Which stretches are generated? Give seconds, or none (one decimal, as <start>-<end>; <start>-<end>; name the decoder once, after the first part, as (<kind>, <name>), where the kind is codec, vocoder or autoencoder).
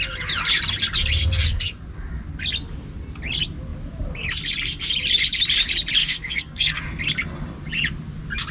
6.0-6.8 (codec, SNAC)